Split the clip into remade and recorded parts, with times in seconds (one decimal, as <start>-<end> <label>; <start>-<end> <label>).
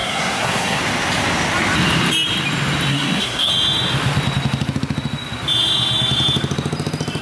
0.0-0.8 remade; 0.8-2.9 recorded; 2.9-3.5 remade; 3.5-7.2 recorded